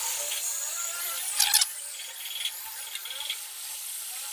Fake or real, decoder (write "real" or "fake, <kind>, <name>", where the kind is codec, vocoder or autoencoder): real